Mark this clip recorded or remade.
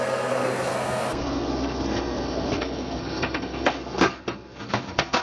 remade